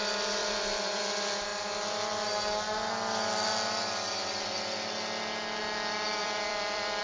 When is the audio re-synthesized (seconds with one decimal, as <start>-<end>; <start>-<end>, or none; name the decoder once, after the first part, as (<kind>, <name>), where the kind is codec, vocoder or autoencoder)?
0.4-1.0 (vocoder, BigVGAN v2); 6.2-7.0